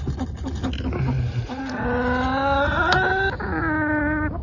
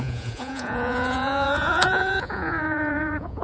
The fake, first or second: second